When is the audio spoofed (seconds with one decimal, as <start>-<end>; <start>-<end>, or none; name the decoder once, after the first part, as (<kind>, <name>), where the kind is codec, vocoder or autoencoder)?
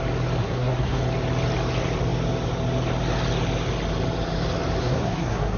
0.4-1.0 (codec, SNAC); 4.8-5.6